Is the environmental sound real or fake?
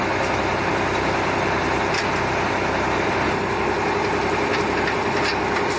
real